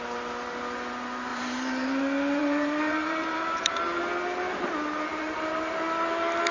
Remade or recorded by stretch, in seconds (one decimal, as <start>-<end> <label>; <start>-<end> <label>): 0.0-1.3 recorded; 1.3-2.0 remade; 2.0-2.4 recorded; 2.4-4.0 remade; 4.0-5.1 recorded; 5.1-5.8 remade; 5.8-6.5 recorded